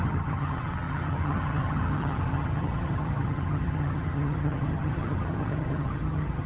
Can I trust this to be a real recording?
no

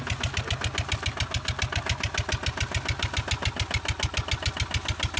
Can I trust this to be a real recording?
yes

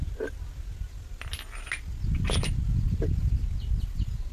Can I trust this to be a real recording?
yes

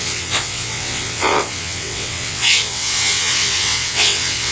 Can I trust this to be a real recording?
no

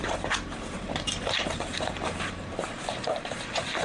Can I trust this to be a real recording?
no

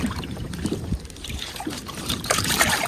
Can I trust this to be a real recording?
no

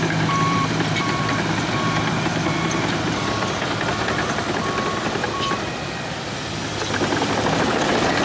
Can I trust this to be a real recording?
no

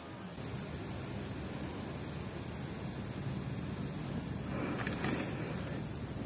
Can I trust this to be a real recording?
yes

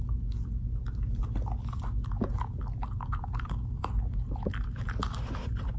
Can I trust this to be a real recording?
yes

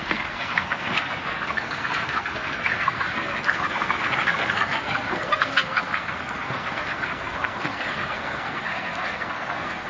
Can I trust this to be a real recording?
no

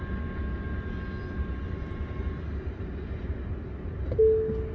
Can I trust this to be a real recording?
yes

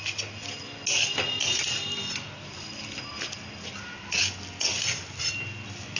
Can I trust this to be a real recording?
yes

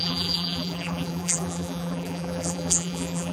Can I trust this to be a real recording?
no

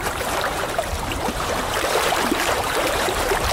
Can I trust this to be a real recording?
no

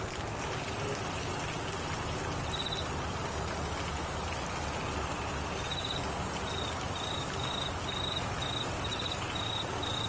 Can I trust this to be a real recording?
yes